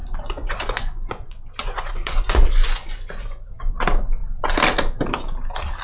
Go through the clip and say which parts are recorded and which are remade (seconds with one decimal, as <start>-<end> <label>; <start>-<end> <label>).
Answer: 0.0-3.5 remade; 3.5-5.8 recorded